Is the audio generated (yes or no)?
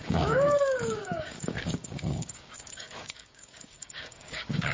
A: yes